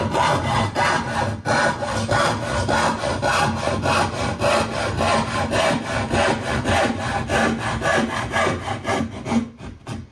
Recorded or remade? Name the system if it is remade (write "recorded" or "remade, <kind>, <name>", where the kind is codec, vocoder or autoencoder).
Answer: recorded